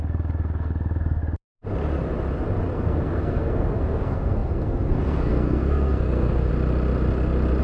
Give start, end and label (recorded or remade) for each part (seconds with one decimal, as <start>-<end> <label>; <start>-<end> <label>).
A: 0.0-1.2 remade; 1.2-2.7 recorded; 2.7-6.5 remade; 6.5-7.6 recorded